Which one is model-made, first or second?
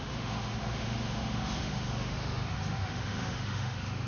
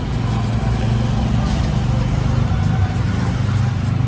first